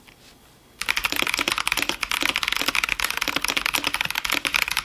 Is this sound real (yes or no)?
yes